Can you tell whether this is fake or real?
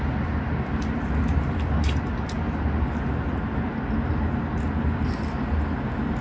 real